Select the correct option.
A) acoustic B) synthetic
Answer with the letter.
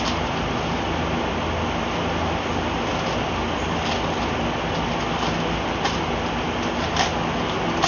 A